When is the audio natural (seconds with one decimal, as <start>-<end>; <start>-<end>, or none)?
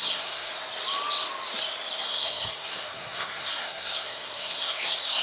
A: 0.5-2.0